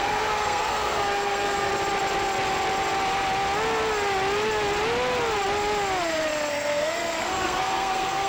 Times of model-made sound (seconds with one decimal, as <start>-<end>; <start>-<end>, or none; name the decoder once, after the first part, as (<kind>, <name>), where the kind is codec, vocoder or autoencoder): 0.0-1.7 (codec, SNAC); 6.5-8.3